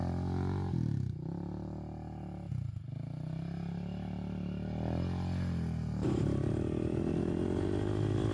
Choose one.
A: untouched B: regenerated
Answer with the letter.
A